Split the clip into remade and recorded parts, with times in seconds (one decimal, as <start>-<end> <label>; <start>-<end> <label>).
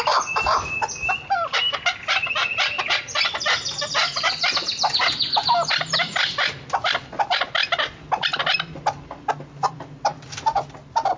0.0-11.2 recorded